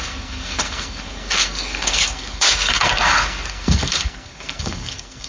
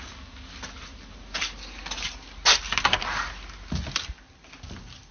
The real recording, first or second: second